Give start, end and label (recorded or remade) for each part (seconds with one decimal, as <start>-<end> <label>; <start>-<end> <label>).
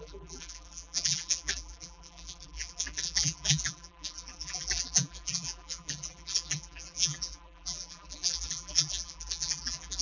0.0-10.0 remade